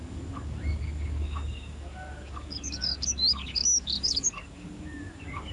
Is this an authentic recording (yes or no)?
no